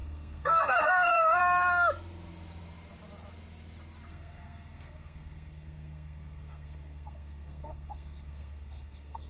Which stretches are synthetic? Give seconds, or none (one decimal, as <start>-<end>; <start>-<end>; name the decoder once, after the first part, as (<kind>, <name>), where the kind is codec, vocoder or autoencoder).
0.0-1.4 (codec, SNAC); 4.1-9.3